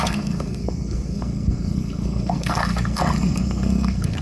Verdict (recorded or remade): remade